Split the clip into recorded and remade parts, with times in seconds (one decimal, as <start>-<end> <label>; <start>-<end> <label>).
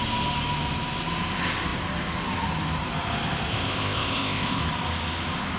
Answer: 0.0-3.5 recorded; 3.5-4.6 remade; 4.6-5.6 recorded